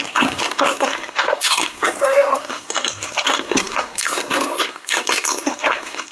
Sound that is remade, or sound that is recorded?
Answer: remade